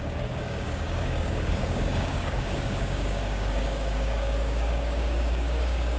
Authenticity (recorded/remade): remade